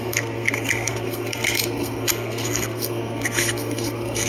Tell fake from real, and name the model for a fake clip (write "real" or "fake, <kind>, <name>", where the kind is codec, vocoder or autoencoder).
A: fake, codec, SNAC